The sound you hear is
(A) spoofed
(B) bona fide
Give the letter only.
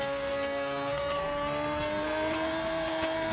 A